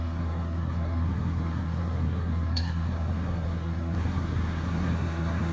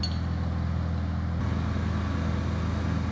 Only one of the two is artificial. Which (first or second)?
first